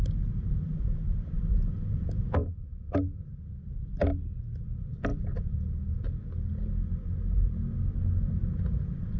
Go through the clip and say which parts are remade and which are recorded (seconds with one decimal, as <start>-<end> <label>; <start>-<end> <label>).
0.0-2.4 recorded; 2.4-3.2 remade; 3.2-9.2 recorded

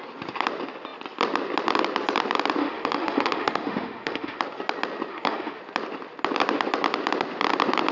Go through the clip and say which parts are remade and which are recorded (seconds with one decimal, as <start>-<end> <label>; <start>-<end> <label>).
0.0-2.6 recorded; 2.6-4.4 remade; 4.4-5.1 recorded; 5.1-5.6 remade; 5.6-7.9 recorded

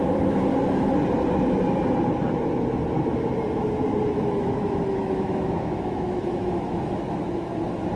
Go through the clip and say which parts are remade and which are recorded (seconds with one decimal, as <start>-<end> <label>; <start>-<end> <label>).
0.0-0.5 remade; 0.5-4.1 recorded; 4.1-7.5 remade; 7.5-8.0 recorded

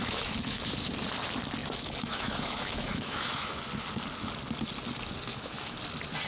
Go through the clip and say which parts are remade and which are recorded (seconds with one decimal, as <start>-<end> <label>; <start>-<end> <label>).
0.0-0.9 remade; 0.9-1.6 recorded; 1.6-3.6 remade; 3.6-5.3 recorded; 5.3-5.8 remade; 5.8-6.3 recorded